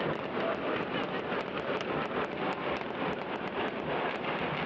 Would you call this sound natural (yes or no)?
yes